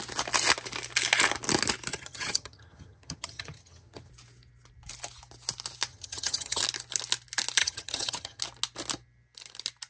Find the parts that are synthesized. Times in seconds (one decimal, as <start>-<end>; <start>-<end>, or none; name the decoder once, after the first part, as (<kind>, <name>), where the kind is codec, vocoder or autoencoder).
1.9-4.1 (vocoder, HiFi-GAN); 5.9-6.6; 7.6-8.4

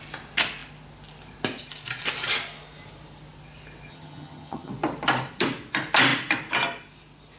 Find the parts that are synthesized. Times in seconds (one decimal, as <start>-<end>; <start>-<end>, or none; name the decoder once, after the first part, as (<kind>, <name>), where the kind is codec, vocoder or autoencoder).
3.9-4.7 (vocoder, HiFi-GAN)

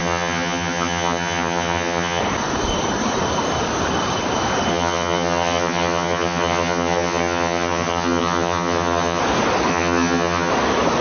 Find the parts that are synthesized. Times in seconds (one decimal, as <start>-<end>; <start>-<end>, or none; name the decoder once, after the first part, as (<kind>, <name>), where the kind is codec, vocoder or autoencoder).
0.0-2.2 (vocoder, HiFi-GAN); 4.7-9.2; 9.7-10.5